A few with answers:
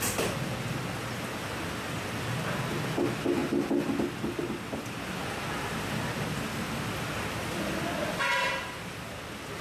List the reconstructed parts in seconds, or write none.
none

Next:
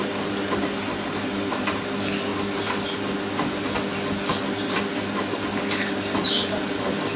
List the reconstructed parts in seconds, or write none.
none

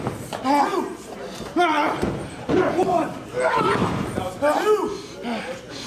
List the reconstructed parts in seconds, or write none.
0.7-4.2 (vocoder, BigVGAN v2)

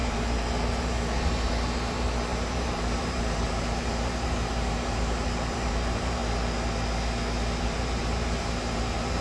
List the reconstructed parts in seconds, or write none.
0.0-6.2 (vocoder, BigVGAN v2); 7.6-9.2

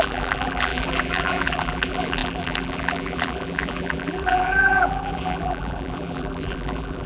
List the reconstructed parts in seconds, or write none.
0.0-7.1 (vocoder, BigVGAN v2)